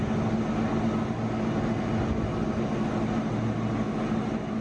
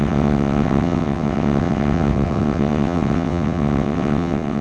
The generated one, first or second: second